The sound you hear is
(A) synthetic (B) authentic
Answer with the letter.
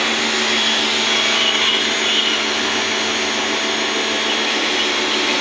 B